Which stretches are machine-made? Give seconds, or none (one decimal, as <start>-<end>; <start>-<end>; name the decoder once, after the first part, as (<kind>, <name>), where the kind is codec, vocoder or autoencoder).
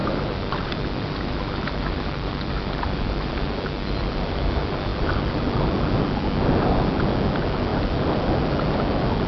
0.0-3.3 (vocoder, BigVGAN v2)